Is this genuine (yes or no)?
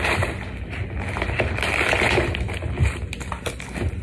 yes